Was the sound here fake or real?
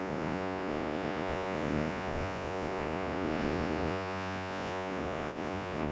fake